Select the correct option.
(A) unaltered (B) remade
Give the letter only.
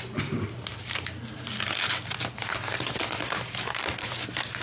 A